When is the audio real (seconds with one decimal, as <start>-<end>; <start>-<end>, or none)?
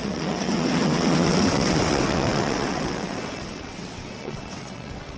none